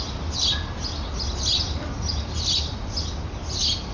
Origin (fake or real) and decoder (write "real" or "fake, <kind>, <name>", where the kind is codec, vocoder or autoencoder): real